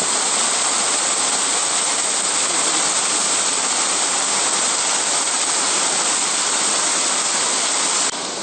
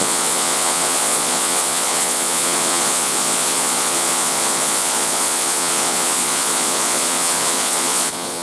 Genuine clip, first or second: first